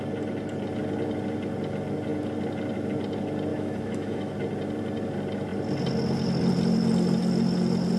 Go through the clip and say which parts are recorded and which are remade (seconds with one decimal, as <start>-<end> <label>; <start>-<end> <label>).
0.0-3.5 recorded; 3.5-4.3 remade; 4.3-8.0 recorded